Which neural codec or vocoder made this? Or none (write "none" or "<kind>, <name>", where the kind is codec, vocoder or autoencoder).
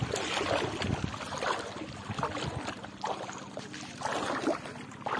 none